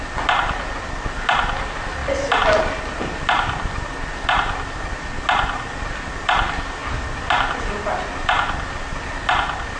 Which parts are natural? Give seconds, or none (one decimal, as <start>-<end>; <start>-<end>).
0.0-9.8